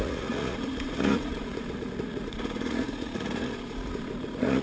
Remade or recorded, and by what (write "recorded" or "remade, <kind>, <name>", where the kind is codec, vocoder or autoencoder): remade, vocoder, Vocos